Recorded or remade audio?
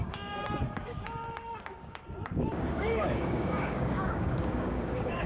remade